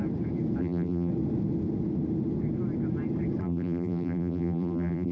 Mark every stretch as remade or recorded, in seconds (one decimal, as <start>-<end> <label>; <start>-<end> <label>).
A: 0.0-0.6 recorded; 0.6-1.1 remade; 1.1-3.4 recorded; 3.4-5.1 remade